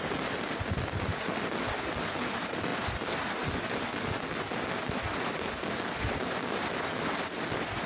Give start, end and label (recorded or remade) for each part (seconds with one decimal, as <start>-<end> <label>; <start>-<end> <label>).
0.0-7.9 recorded